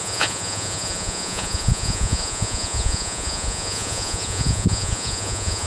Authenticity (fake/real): fake